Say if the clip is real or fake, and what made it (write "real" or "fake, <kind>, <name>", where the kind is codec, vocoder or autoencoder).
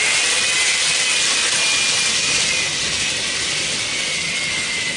real